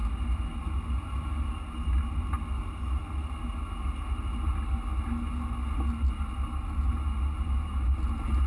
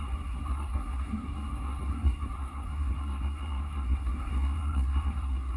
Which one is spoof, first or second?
second